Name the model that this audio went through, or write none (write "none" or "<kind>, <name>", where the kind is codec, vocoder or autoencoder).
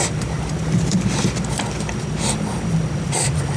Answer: none